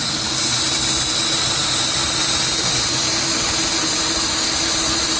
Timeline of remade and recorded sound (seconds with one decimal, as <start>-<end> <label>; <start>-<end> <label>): 0.0-5.2 remade